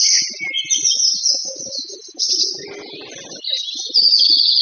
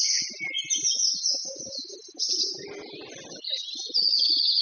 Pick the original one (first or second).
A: second